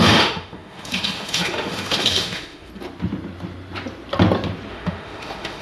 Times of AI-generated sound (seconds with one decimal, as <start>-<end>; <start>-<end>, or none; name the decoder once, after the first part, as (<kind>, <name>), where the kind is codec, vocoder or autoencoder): 0.0-2.7 (autoencoder, DAC-VAE); 4.7-5.6